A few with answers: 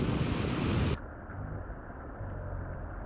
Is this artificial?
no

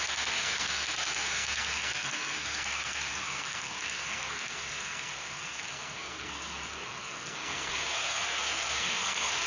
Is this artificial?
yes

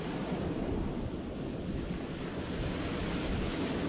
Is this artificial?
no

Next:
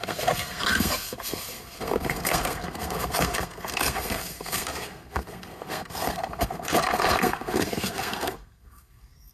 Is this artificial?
yes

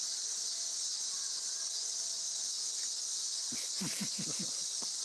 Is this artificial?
no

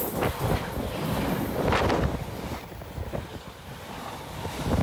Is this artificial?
no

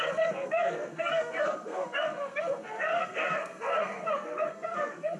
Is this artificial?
yes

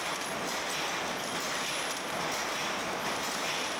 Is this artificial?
no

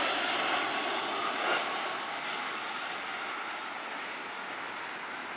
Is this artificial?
no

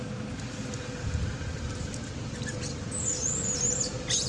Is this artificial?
no